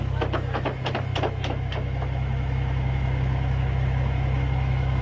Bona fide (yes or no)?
no